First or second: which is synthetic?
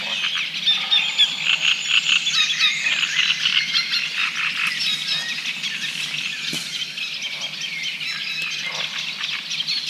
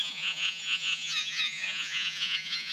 second